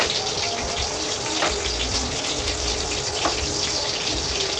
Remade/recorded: recorded